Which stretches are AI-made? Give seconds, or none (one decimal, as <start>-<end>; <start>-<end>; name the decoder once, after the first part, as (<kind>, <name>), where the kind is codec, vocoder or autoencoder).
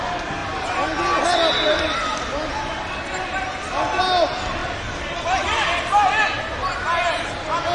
4.6-5.9 (vocoder, BigVGAN v2)